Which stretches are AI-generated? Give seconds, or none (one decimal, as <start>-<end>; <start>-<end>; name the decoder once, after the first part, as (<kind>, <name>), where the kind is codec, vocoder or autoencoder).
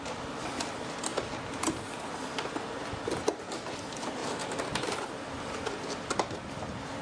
none